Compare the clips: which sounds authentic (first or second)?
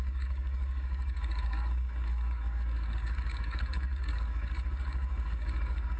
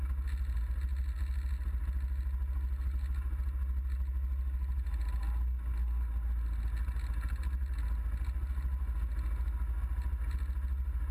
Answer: second